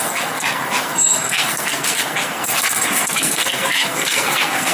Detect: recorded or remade remade